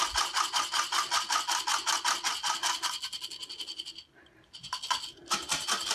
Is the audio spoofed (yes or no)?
no